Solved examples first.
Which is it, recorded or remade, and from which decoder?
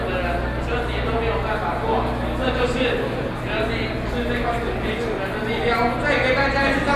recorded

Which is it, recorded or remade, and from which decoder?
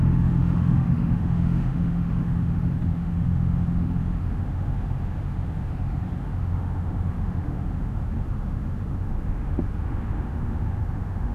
remade, autoencoder, DAC-VAE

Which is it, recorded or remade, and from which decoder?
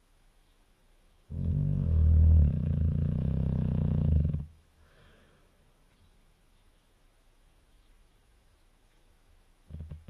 remade, autoencoder, DAC-VAE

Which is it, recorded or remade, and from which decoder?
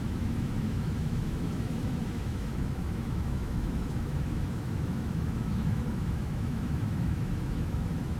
remade, autoencoder, DAC-VAE